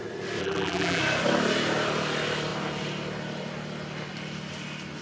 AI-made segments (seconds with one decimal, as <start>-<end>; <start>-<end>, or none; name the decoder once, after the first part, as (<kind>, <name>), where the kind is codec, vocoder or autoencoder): 0.4-1.0 (vocoder, BigVGAN v2)